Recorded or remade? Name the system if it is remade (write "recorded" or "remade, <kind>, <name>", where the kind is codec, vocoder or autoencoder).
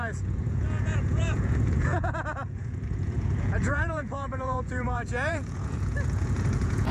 remade, vocoder, Vocos